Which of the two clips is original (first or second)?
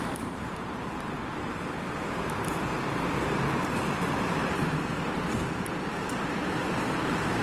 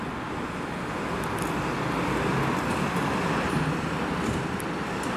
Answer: second